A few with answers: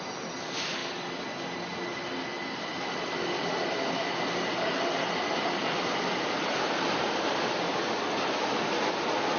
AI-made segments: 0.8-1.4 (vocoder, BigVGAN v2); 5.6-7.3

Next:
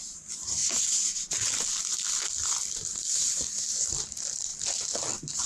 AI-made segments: 0.0-0.6 (vocoder, BigVGAN v2); 3.8-4.5; 5.1-5.5

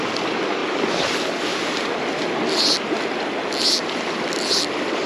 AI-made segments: 0.0-0.6 (vocoder, BigVGAN v2); 3.7-5.1